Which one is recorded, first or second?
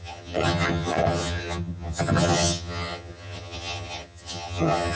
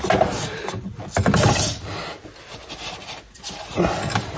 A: second